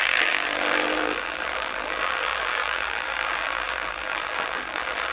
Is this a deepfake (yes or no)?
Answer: yes